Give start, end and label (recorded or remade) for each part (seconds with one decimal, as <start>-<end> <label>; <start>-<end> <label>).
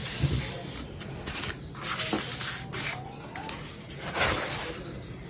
0.0-5.3 recorded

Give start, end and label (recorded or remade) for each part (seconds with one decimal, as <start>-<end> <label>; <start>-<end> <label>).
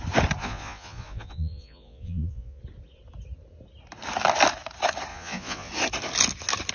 0.0-0.4 recorded; 0.4-2.6 remade; 2.6-5.1 recorded; 5.1-5.7 remade; 5.7-6.7 recorded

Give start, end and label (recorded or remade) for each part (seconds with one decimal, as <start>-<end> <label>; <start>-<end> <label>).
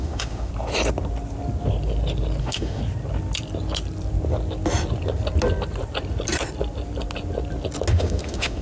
0.0-0.5 remade; 0.5-2.4 recorded; 2.4-2.8 remade; 2.8-7.9 recorded; 7.9-8.6 remade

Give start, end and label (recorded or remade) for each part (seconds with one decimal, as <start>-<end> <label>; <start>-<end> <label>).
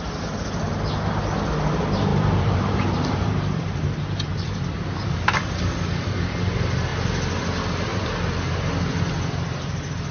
0.0-2.1 recorded; 2.1-5.5 remade; 5.5-7.9 recorded; 7.9-9.0 remade; 9.0-10.1 recorded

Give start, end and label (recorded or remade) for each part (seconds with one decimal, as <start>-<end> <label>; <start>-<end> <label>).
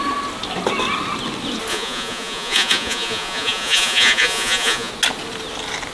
0.0-1.7 recorded; 1.7-4.9 remade; 4.9-5.9 recorded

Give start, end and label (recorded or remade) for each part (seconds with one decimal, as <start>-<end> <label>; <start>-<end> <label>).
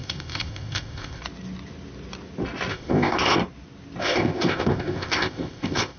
0.0-1.2 remade; 1.2-2.7 recorded; 2.7-3.4 remade; 3.4-4.0 recorded; 4.0-6.0 remade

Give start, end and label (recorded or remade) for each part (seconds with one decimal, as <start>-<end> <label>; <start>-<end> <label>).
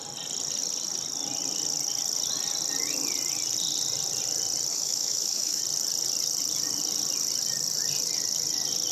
0.0-4.7 recorded; 4.7-5.6 remade; 5.6-8.9 recorded